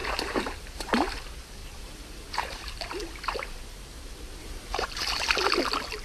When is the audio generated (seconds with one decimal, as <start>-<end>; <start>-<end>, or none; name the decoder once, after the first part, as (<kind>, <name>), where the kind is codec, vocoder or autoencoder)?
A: 0.0-0.9 (vocoder, BigVGAN v2); 1.6-3.8; 4.4-5.3